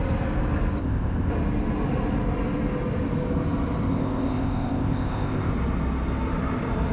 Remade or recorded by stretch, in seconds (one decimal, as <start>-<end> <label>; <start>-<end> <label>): 0.0-0.8 recorded; 0.8-1.3 remade; 1.3-3.9 recorded; 3.9-5.5 remade; 5.5-6.9 recorded